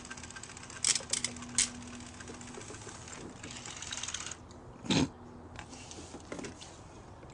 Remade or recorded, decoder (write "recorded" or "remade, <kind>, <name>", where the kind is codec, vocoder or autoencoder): recorded